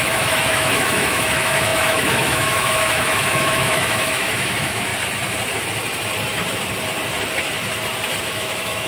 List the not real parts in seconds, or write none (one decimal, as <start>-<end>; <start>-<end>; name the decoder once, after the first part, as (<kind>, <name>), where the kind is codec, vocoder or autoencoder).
0.0-4.9 (autoencoder, DAC-VAE); 8.2-8.9